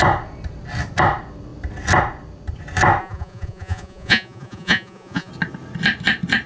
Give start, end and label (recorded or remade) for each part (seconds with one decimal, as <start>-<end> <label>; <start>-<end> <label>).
0.0-3.0 recorded; 3.0-5.3 remade; 5.3-6.5 recorded